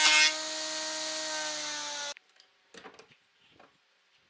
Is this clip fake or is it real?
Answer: real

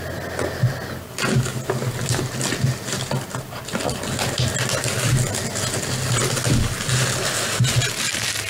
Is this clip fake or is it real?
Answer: real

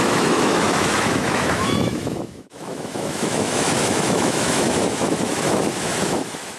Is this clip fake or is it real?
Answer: fake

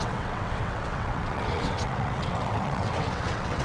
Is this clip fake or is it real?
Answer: fake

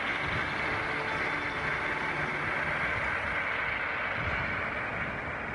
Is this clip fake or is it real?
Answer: real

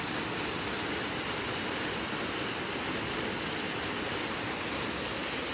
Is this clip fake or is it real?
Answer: real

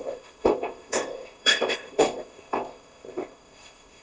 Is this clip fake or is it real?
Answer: fake